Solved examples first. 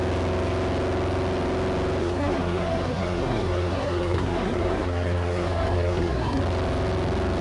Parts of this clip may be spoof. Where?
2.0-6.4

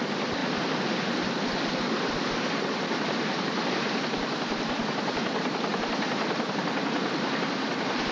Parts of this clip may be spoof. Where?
0.0-8.1

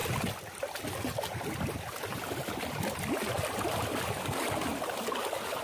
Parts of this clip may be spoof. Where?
4.6-5.6

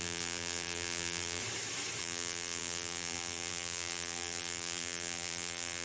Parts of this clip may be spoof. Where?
0.0-1.4; 2.0-5.8

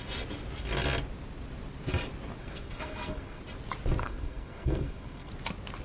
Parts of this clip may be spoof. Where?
2.4-3.4; 4.0-5.3